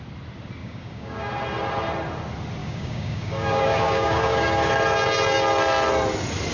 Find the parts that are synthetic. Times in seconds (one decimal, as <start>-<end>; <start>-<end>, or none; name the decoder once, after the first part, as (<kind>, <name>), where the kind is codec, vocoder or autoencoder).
0.6-1.3 (codec, DAC); 2.6-4.7